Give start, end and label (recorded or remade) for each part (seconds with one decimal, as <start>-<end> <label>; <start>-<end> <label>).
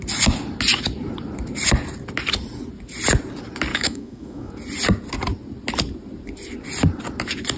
0.0-3.7 recorded; 3.7-4.5 remade; 4.5-7.6 recorded